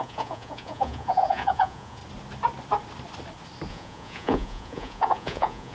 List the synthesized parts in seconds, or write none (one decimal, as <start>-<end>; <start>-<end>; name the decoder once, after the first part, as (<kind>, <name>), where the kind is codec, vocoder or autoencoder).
0.0-2.0 (vocoder, Vocos); 3.7-5.7